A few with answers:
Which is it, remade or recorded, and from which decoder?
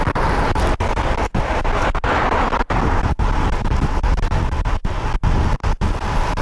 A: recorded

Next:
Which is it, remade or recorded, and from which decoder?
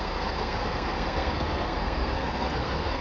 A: remade, codec, SNAC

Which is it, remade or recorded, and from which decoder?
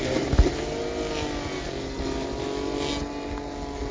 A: recorded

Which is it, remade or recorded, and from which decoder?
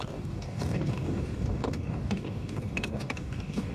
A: remade, codec, DAC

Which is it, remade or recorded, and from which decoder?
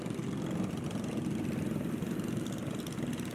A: recorded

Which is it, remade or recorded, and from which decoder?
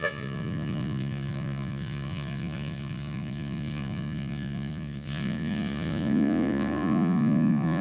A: remade, vocoder, Vocos